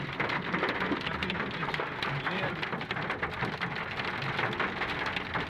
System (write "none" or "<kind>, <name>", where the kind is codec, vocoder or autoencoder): none